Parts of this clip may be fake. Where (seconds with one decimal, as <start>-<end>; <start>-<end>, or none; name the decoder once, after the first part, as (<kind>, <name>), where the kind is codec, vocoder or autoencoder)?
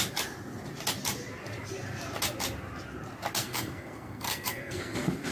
3.4-5.3 (codec, SNAC)